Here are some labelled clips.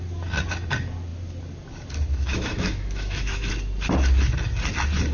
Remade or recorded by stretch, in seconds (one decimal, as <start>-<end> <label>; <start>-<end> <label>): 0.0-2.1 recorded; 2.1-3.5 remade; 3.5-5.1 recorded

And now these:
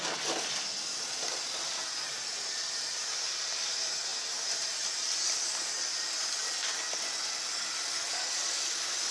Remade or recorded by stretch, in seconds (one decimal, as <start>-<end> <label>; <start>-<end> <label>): 0.0-9.1 recorded

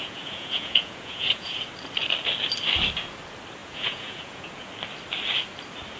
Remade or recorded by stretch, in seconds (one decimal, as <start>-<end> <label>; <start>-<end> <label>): 0.0-1.6 remade; 1.6-3.6 recorded; 3.6-4.7 remade; 4.7-6.0 recorded

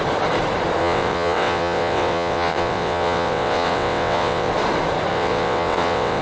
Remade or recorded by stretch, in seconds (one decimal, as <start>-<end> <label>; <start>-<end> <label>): 0.0-0.8 recorded; 0.8-4.5 remade; 4.5-5.1 recorded; 5.1-6.2 remade

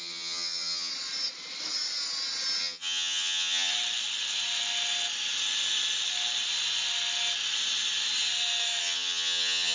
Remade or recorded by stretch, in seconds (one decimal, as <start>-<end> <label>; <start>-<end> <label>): 0.0-0.9 remade; 0.9-2.6 recorded; 2.6-3.7 remade; 3.7-8.8 recorded; 8.8-9.7 remade

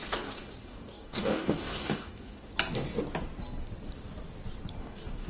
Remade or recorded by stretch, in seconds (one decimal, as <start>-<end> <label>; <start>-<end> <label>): 0.0-2.5 remade; 2.5-4.8 recorded; 4.8-5.3 remade